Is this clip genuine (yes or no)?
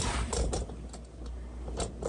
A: yes